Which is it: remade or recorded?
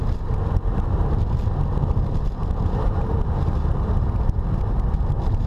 remade